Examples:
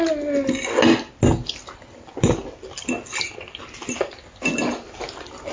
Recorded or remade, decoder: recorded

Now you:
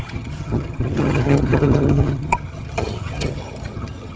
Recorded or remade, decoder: remade, vocoder, HiFi-GAN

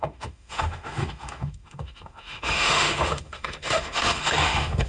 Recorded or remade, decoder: remade, autoencoder, DAC-VAE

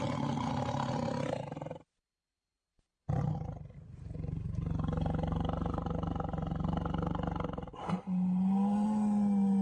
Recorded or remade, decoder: recorded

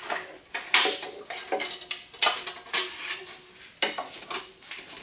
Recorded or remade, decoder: recorded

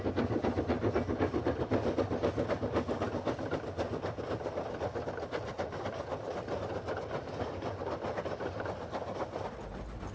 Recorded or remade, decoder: recorded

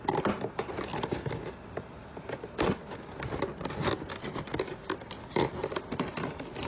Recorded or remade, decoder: recorded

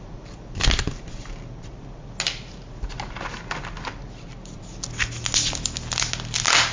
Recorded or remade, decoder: recorded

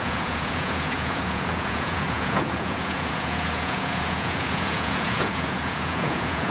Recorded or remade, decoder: remade, vocoder, Vocos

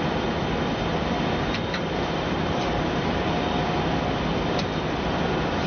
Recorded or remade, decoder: recorded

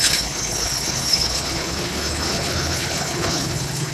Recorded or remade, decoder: remade, codec, HILCodec